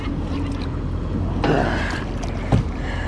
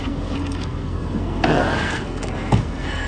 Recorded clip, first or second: first